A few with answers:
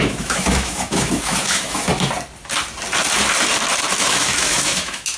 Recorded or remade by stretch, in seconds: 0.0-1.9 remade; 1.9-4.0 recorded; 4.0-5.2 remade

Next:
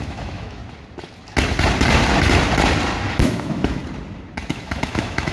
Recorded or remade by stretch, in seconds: 0.0-0.6 remade; 0.6-3.1 recorded; 3.1-3.8 remade; 3.8-4.5 recorded; 4.5-5.3 remade

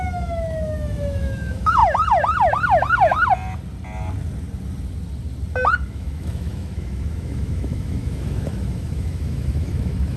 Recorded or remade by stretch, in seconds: 0.0-1.8 remade; 1.8-5.9 recorded; 5.9-10.2 remade

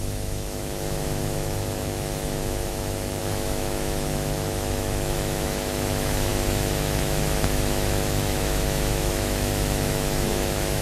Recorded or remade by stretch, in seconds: 0.0-10.8 remade

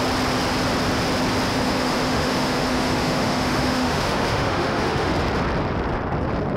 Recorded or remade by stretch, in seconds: 0.0-1.5 recorded; 1.5-5.1 remade; 5.1-6.6 recorded

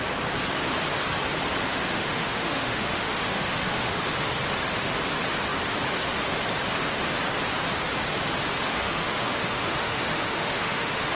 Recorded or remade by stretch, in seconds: 0.0-1.7 recorded; 1.7-4.3 remade; 4.3-8.6 recorded; 8.6-11.1 remade